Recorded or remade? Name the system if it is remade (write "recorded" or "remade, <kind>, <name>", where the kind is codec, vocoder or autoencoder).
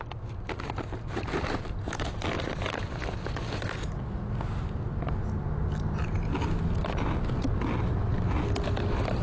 recorded